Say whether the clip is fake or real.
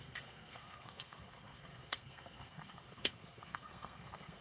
fake